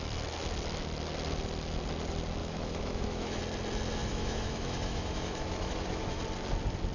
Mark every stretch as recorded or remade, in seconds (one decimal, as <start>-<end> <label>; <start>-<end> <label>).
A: 0.0-2.4 recorded; 2.4-3.4 remade; 3.4-4.1 recorded; 4.1-6.2 remade; 6.2-6.9 recorded